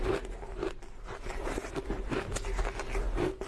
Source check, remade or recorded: recorded